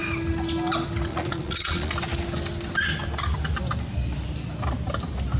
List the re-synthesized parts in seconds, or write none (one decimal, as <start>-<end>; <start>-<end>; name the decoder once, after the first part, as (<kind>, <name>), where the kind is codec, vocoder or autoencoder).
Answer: 1.1-1.9 (vocoder, Vocos)